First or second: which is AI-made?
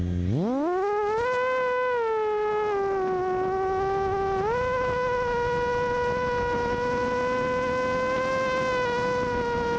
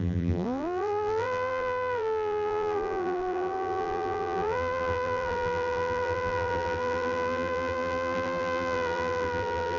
second